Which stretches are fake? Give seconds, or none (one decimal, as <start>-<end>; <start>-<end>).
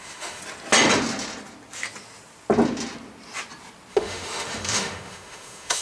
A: 0.0-0.4; 3.9-5.8